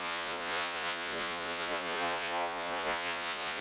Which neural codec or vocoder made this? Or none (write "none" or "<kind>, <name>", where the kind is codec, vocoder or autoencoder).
vocoder, Vocos